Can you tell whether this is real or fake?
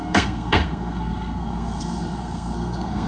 fake